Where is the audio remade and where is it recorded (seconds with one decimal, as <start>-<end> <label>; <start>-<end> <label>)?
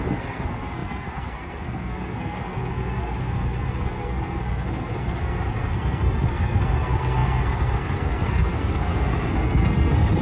0.0-10.2 remade